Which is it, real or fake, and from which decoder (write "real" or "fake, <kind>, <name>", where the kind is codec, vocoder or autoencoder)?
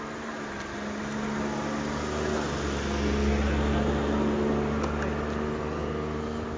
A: real